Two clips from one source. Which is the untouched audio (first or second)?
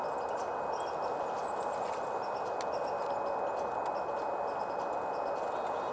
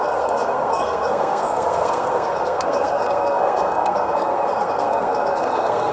first